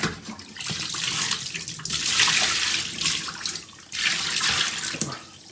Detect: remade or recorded recorded